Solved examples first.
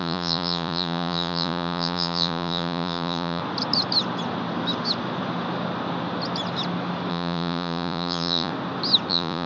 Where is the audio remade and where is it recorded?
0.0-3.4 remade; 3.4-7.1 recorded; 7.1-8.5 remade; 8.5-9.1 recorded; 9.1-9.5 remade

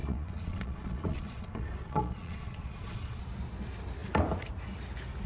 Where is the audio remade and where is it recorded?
0.0-3.2 remade; 3.2-5.3 recorded

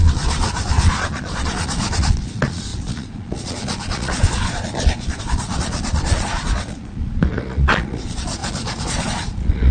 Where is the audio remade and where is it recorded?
0.0-9.7 remade

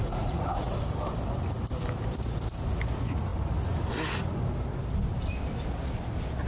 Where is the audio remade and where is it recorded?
0.0-1.0 remade; 1.0-6.5 recorded

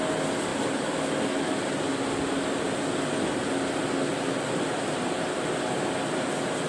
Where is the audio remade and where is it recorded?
0.0-6.7 recorded

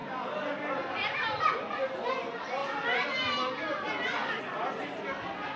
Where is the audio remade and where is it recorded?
0.0-5.6 recorded

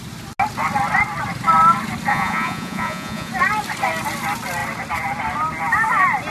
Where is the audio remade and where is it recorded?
0.0-2.1 recorded; 2.1-3.3 remade; 3.3-6.3 recorded